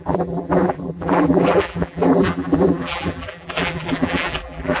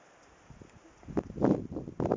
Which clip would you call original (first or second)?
second